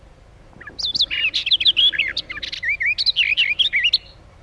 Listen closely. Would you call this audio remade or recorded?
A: recorded